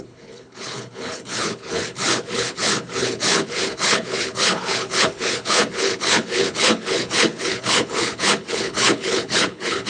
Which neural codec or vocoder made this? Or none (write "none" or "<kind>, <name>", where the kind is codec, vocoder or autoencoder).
codec, HILCodec